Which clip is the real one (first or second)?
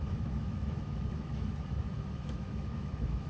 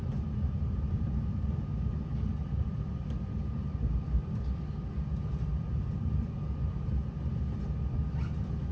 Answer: second